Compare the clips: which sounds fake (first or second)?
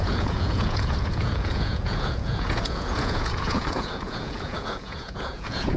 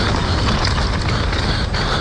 first